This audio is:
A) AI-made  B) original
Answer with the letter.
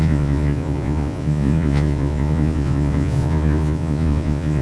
A